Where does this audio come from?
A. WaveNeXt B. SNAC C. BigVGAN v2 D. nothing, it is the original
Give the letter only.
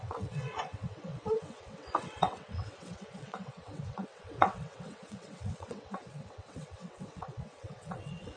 A